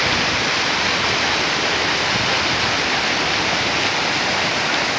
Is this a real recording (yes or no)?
yes